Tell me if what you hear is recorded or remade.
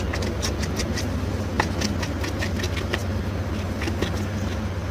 recorded